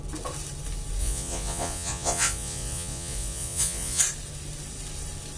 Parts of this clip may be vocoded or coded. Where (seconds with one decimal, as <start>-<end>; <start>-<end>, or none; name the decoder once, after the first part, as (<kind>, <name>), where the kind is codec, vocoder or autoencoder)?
1.0-4.0 (vocoder, Vocos)